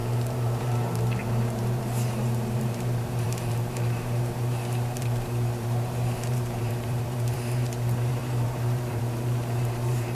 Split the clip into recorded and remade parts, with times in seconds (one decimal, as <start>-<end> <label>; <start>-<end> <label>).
0.0-10.1 remade